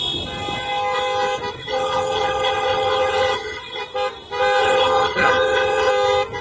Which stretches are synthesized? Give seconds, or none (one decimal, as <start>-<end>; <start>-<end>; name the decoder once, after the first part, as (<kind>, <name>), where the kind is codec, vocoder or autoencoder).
1.6-3.8 (vocoder, HiFi-GAN); 4.6-5.9